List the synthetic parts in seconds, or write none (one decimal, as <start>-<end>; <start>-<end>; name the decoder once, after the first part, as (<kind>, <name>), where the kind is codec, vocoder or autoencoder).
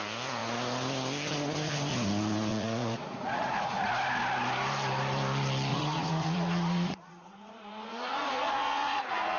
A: 2.5-3.9 (vocoder, Vocos); 5.7-9.4